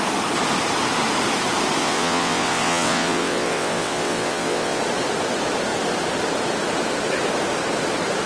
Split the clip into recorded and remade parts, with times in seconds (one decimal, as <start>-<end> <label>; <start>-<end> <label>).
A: 0.0-1.8 recorded; 1.8-4.8 remade; 4.8-8.3 recorded